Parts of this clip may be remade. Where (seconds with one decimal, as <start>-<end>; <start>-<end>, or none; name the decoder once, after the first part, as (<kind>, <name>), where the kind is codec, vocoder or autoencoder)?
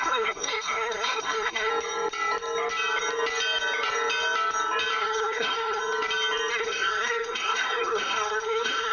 0.0-1.7 (codec, SNAC); 5.0-5.8; 6.5-8.9